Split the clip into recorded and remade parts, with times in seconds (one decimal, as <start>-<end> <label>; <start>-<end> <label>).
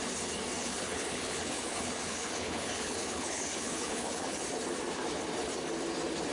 0.0-0.6 recorded; 0.6-4.4 remade; 4.4-6.3 recorded